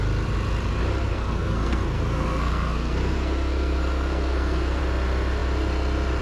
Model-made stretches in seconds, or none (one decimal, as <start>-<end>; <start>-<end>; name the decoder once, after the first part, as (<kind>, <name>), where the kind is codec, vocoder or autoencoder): 1.1-4.8 (codec, SNAC)